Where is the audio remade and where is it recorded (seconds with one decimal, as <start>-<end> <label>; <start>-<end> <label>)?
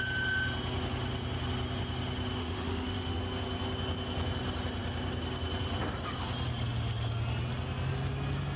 0.0-2.4 recorded; 2.4-3.2 remade; 3.2-8.6 recorded